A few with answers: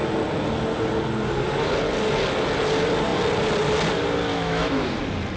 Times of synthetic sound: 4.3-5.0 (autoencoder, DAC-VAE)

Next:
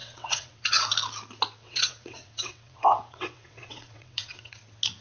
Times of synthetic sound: 0.0-0.8 (vocoder, WaveNeXt); 1.6-4.6

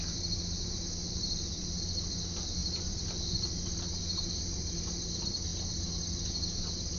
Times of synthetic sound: 1.0-1.8 (vocoder, BigVGAN v2); 2.6-4.0

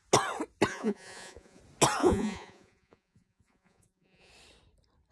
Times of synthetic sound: 0.7-1.6 (vocoder, Vocos); 2.0-4.3